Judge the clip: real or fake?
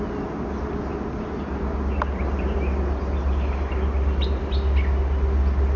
real